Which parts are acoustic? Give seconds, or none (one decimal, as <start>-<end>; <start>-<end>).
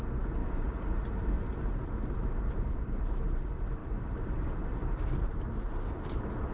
0.0-0.4; 1.4-3.8